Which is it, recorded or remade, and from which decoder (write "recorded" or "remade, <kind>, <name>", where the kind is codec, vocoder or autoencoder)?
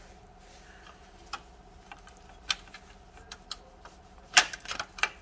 recorded